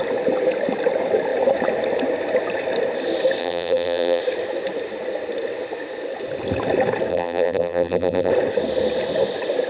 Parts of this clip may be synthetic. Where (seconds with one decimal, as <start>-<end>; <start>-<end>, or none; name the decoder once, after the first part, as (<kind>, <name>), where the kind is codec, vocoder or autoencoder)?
3.4-4.2 (vocoder, BigVGAN v2); 7.1-8.3